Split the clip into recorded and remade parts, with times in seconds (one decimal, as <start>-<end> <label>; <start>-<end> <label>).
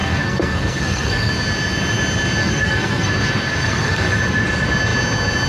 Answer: 0.0-1.3 remade; 1.3-2.4 recorded; 2.4-3.1 remade; 3.1-3.6 recorded; 3.6-4.2 remade; 4.2-5.5 recorded